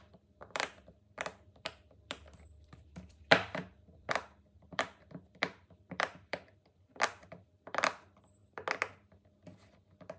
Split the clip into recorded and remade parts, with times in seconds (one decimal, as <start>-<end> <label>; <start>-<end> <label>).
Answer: 0.0-8.4 remade; 8.4-10.2 recorded